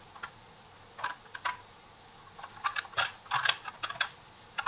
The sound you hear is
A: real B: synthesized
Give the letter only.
A